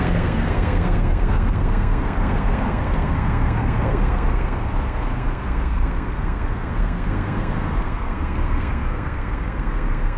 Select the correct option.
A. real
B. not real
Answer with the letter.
B